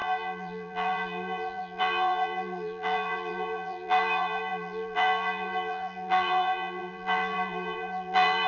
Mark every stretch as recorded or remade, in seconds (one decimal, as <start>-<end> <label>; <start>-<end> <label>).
0.0-8.5 remade